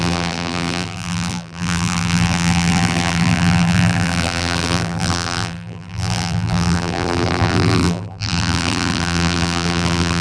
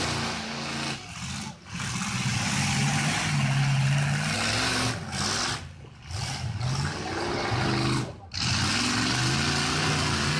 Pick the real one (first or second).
second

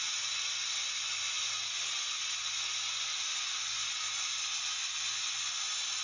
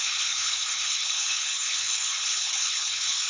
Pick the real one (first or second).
first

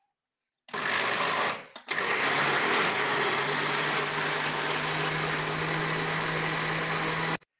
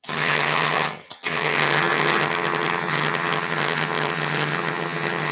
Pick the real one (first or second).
first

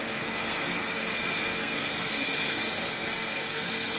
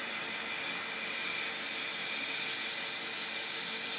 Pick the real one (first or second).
second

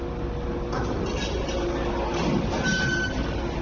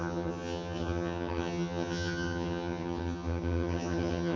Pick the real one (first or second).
first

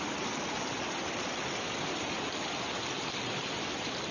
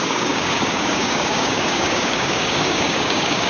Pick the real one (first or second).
first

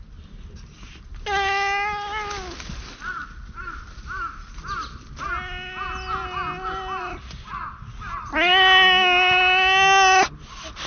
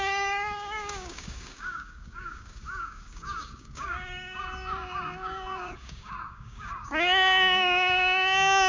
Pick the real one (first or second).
first